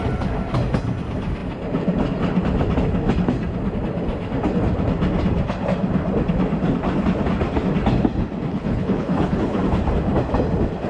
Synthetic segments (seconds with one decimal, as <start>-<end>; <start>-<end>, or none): 8.5-9.6